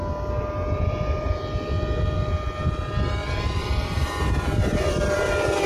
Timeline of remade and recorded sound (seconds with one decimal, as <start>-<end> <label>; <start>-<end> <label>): 0.0-3.2 recorded; 3.2-5.3 remade; 5.3-5.7 recorded